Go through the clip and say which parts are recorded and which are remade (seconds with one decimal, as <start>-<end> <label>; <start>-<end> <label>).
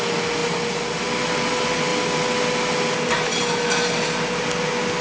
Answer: 0.0-5.0 recorded